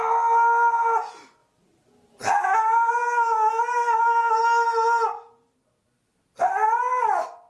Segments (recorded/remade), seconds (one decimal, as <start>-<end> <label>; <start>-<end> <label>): 0.0-7.5 recorded